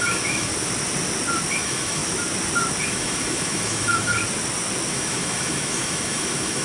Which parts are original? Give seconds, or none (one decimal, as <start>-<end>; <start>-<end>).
0.5-1.5; 2.0-2.8; 4.2-4.9

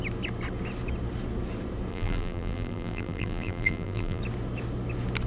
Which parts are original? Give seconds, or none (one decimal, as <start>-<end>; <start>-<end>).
0.0-1.9; 4.2-5.3

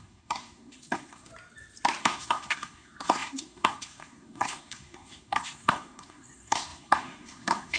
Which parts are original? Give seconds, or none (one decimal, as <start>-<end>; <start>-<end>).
1.3-2.0

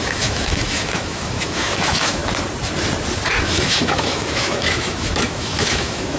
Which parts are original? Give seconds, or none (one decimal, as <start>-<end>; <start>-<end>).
2.2-3.4